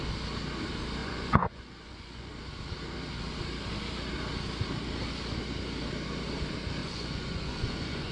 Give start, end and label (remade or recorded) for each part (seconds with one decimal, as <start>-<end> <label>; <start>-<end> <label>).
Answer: 0.0-1.0 recorded; 1.0-2.3 remade; 2.3-6.8 recorded; 6.8-8.1 remade